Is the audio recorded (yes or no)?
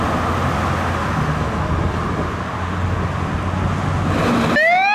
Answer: yes